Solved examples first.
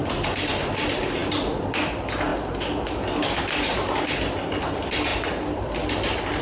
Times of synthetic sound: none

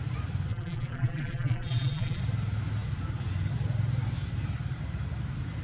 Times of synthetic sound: 0.5-2.2 (vocoder, BigVGAN v2)

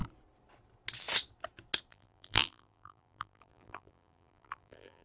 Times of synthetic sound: 1.9-5.0 (vocoder, BigVGAN v2)

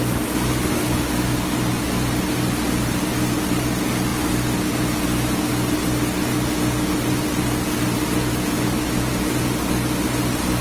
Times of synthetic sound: 8.3-9.1 (autoencoder, DAC-VAE)